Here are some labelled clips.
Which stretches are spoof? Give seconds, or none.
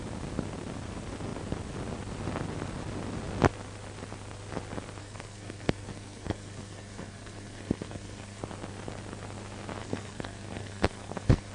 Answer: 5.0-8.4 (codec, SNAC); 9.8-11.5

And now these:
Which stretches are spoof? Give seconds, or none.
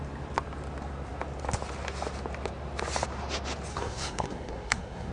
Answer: 3.7-5.1 (codec, SNAC)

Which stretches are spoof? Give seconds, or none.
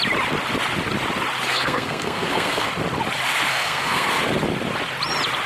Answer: 1.5-2.7 (codec, SNAC); 3.5-4.1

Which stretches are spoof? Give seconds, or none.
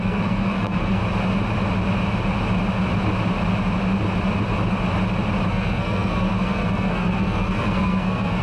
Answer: 0.0-1.0 (codec, SNAC); 5.5-8.4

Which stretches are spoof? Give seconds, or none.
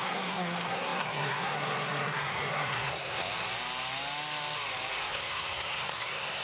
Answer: 0.0-3.2 (codec, SNAC); 5.0-6.4